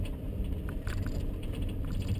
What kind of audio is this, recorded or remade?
remade